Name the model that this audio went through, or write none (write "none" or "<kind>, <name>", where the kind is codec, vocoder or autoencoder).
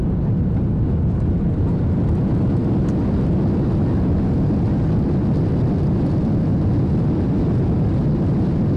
none